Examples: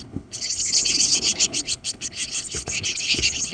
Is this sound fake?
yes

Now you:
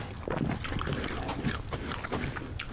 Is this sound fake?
no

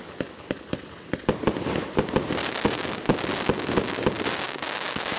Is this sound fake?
no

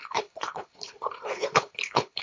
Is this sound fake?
yes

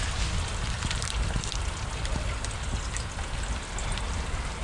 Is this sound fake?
no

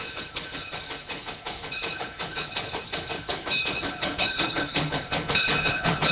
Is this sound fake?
yes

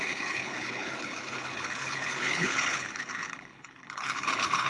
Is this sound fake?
yes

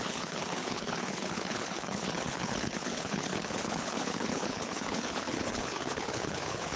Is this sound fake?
yes